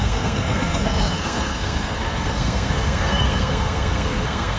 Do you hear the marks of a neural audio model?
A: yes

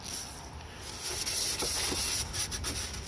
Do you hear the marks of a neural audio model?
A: no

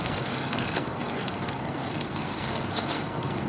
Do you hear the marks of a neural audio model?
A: yes